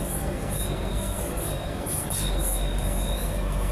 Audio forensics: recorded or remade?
remade